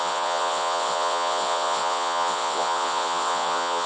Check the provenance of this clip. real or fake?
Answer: fake